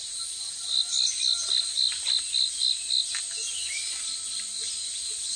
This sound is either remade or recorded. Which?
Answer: recorded